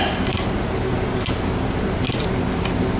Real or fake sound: real